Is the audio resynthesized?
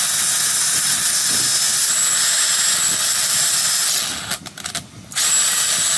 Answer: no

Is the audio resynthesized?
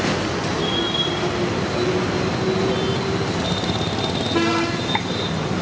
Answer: no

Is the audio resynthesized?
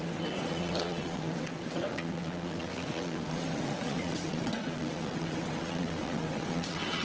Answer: yes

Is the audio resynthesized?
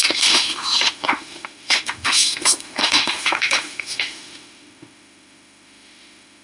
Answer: yes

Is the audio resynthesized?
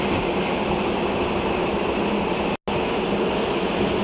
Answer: no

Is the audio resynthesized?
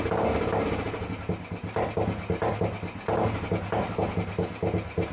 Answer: no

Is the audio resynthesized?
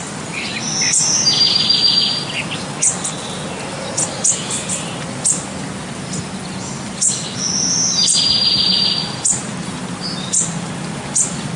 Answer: no